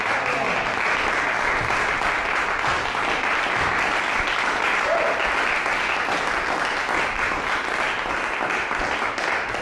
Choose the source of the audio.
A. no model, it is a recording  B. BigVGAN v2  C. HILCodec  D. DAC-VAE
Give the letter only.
A